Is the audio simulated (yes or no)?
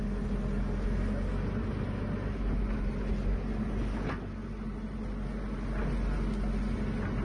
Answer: no